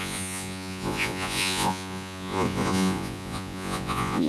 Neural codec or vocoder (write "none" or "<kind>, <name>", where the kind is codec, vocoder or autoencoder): vocoder, Vocos